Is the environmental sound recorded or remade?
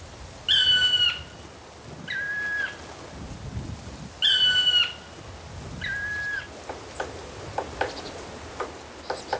recorded